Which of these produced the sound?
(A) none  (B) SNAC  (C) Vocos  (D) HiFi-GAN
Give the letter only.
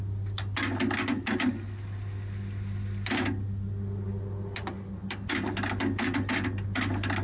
A